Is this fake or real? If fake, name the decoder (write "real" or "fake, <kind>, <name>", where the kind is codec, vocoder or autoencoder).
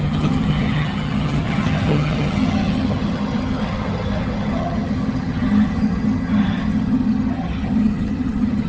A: fake, vocoder, HiFi-GAN